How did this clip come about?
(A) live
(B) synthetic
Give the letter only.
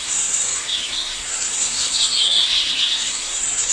B